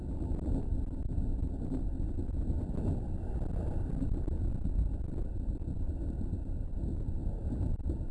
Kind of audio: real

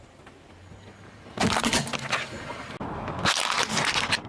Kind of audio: real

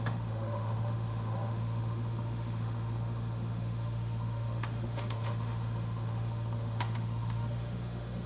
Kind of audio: fake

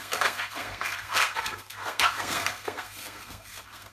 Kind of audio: fake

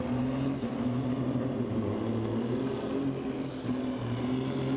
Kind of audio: real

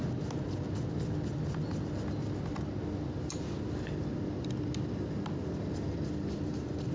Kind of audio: real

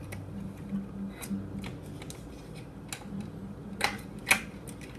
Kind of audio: real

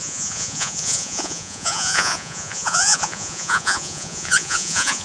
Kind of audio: fake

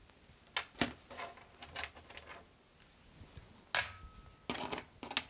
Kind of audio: real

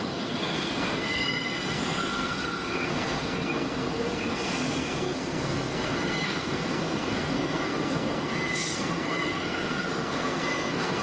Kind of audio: fake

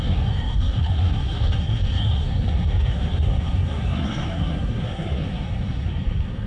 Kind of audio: fake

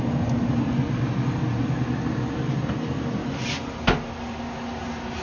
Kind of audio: real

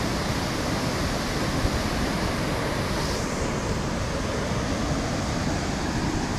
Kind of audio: real